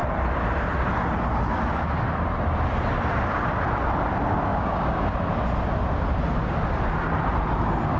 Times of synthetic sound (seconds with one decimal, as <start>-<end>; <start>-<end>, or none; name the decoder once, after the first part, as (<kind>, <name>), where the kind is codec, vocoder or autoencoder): 4.5-5.1 (codec, DAC)